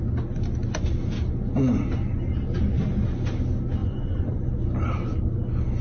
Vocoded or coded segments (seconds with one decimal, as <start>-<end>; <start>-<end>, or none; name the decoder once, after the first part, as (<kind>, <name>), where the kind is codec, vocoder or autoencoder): 3.8-4.5 (vocoder, Vocos)